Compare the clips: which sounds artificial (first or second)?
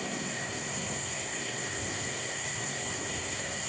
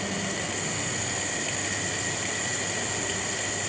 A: first